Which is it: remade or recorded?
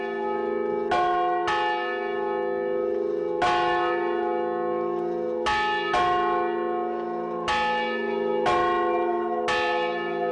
recorded